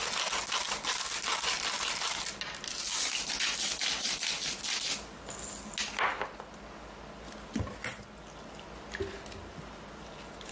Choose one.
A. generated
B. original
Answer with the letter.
B